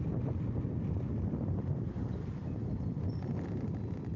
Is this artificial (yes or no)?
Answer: no